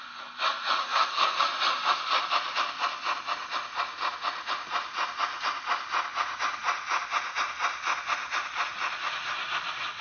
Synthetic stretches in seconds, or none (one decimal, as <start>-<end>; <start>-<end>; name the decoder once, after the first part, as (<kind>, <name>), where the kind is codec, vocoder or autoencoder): 0.8-1.4 (codec, SNAC)